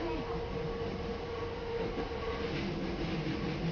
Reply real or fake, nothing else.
real